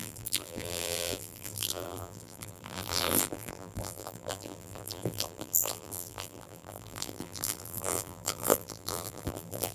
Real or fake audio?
fake